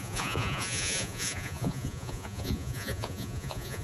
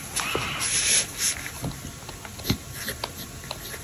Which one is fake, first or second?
first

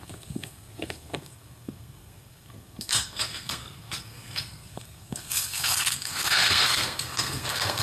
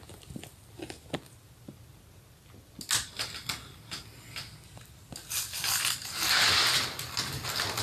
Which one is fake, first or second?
first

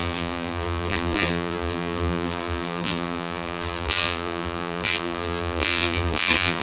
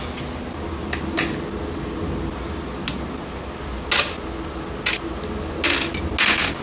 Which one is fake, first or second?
first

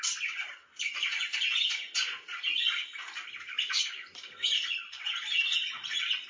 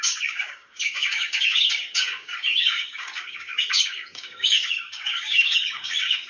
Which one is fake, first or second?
second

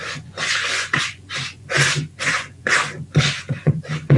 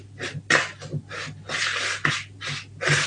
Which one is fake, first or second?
first